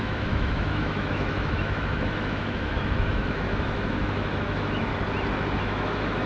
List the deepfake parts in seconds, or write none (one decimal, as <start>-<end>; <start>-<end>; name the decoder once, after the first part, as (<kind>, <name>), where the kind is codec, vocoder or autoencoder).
0.0-4.9 (autoencoder, DAC-VAE); 5.6-6.3